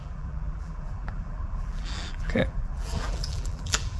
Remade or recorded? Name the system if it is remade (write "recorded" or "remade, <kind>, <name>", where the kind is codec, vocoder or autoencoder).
remade, vocoder, BigVGAN v2